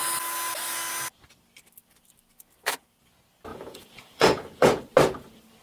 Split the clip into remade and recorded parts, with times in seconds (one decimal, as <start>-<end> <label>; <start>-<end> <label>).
0.0-3.5 recorded; 3.5-4.8 remade; 4.8-5.6 recorded